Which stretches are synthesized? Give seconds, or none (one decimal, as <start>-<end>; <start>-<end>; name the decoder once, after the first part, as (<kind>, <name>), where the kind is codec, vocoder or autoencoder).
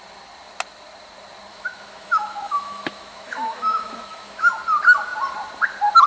1.5-4.5 (autoencoder, DAC-VAE)